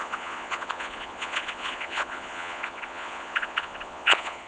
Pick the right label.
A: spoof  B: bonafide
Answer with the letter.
A